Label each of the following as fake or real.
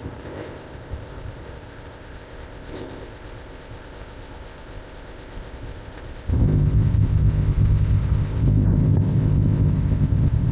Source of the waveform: fake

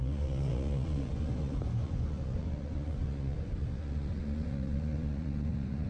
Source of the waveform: fake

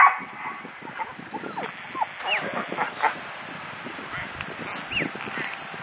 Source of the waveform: real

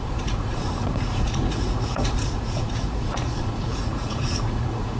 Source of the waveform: fake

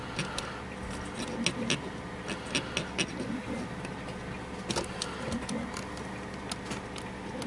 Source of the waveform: real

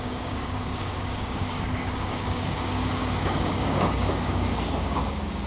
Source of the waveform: fake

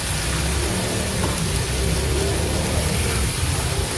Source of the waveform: real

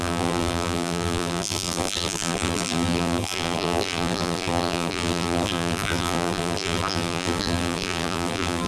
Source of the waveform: fake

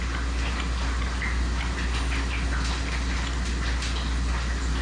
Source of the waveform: real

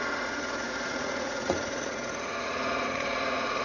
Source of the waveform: fake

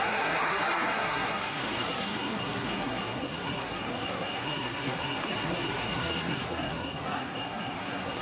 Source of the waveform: fake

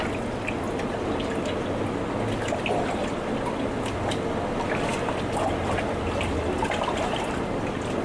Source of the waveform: real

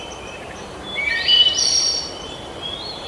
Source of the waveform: fake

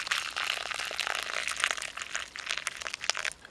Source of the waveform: real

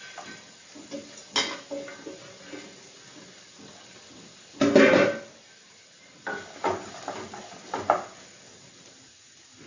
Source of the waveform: real